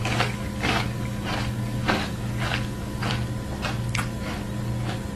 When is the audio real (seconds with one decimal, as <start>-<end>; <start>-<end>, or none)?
3.1-5.2

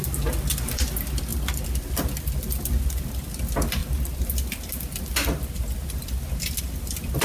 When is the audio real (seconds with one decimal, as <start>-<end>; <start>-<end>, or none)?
0.0-7.2